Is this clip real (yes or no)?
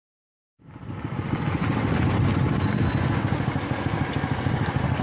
yes